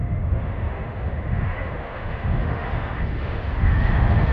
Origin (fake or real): fake